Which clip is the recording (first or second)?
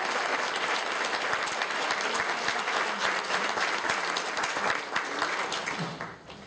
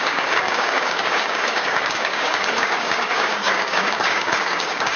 first